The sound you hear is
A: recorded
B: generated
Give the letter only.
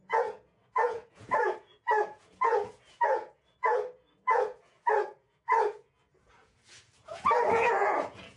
B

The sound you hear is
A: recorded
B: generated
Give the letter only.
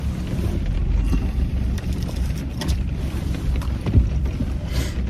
B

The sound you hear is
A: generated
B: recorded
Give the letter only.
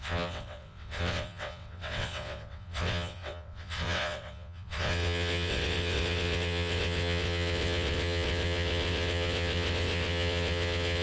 A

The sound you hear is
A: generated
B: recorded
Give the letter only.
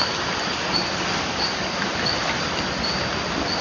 B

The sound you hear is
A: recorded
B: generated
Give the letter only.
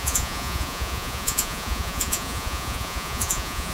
B